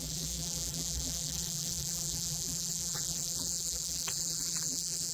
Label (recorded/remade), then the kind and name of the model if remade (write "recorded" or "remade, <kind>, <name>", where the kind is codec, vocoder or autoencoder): remade, vocoder, BigVGAN v2